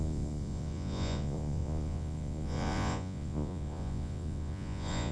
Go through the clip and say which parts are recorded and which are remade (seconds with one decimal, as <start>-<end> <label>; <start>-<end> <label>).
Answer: 0.0-5.1 remade